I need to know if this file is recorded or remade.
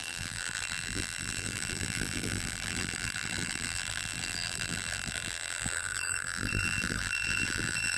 remade